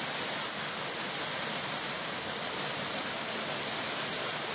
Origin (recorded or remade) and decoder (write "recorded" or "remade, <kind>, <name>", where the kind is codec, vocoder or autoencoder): recorded